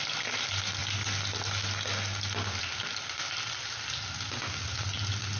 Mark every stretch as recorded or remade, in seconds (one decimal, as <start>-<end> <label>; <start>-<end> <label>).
0.0-5.4 recorded